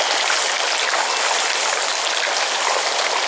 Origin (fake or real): real